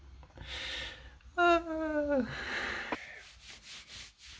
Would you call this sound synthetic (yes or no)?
no